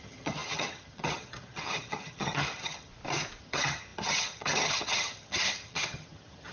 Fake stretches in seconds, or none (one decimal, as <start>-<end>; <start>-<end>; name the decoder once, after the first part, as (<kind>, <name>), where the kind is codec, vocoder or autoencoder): 0.0-2.9 (vocoder, HiFi-GAN); 3.4-6.5